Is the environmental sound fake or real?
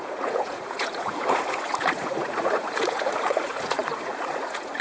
fake